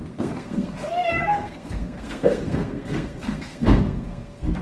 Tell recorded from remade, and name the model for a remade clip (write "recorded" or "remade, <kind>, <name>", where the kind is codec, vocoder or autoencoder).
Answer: remade, codec, SNAC